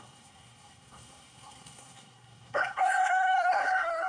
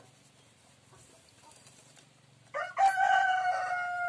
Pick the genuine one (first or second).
second